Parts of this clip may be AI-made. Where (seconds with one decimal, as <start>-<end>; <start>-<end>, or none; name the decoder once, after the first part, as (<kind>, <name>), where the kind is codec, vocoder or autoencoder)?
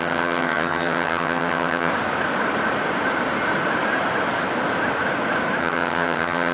0.0-1.9 (vocoder, HiFi-GAN); 5.6-6.5